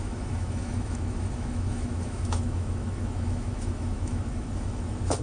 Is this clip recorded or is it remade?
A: remade